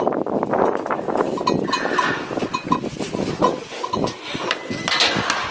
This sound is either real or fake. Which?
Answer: real